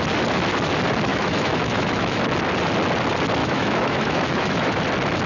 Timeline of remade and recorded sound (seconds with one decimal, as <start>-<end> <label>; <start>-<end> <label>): 0.0-1.1 recorded; 1.1-2.2 remade; 2.2-3.4 recorded; 3.4-4.8 remade; 4.8-5.3 recorded

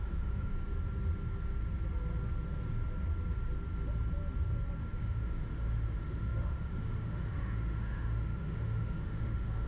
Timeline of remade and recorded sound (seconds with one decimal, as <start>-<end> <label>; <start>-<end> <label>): 0.0-0.5 remade; 0.5-5.0 recorded; 5.0-9.7 remade

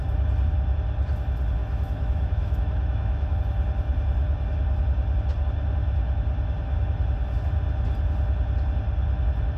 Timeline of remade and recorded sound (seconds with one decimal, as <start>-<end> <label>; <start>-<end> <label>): 0.0-1.6 recorded; 1.6-3.4 remade; 3.4-9.6 recorded